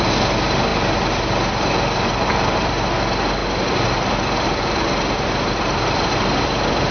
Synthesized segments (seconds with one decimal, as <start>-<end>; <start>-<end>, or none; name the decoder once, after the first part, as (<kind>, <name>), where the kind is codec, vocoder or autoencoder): none